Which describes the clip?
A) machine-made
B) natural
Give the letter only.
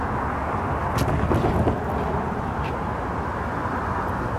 B